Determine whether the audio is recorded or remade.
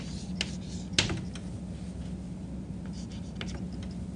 recorded